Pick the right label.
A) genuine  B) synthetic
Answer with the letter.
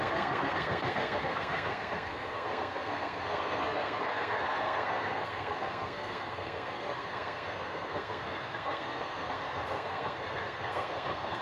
B